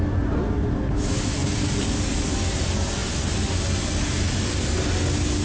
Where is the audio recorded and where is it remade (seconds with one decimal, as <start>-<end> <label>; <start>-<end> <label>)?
0.0-5.4 recorded